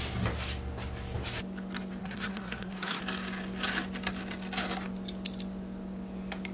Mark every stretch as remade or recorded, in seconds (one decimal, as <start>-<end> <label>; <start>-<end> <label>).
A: 0.0-2.0 recorded; 2.0-3.0 remade; 3.0-6.5 recorded